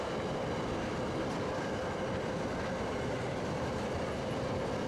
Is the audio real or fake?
real